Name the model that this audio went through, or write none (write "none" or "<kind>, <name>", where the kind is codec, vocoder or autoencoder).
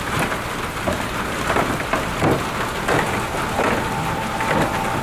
none